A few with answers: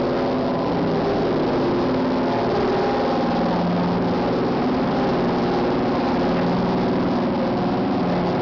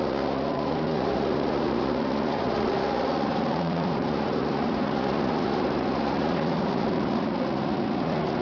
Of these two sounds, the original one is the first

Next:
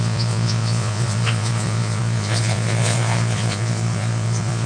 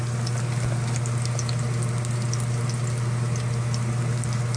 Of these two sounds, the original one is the second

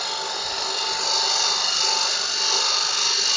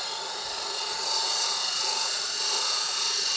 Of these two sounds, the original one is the first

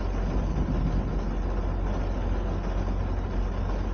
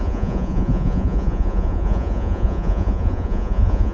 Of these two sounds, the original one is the first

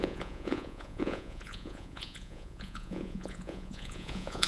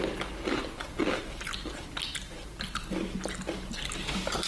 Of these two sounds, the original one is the second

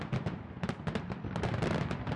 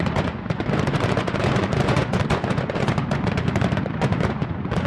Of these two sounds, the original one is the first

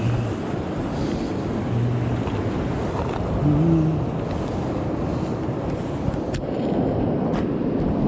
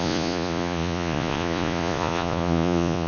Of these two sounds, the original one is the first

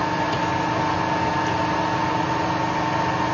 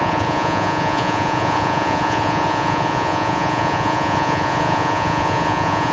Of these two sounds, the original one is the first